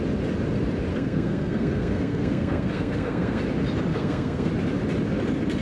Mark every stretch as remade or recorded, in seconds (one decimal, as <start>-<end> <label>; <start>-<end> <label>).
0.0-0.9 recorded; 0.9-3.4 remade; 3.4-3.9 recorded; 3.9-4.5 remade; 4.5-5.6 recorded